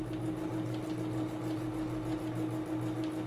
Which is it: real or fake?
real